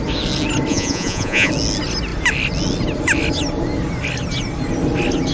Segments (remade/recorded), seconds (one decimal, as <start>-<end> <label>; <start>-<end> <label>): 0.0-0.7 recorded; 0.7-1.5 remade; 1.5-5.3 recorded